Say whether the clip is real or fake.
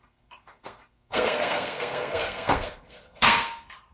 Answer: fake